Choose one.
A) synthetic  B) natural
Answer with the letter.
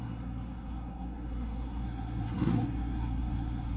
A